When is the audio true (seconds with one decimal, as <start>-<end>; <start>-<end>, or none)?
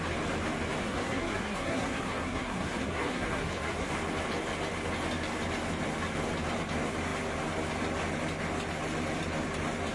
0.0-0.8; 3.9-9.9